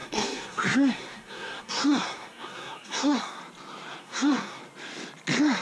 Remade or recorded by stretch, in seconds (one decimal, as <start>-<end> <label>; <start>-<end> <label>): 0.0-3.4 remade; 3.4-4.0 recorded; 4.0-4.6 remade; 4.6-5.6 recorded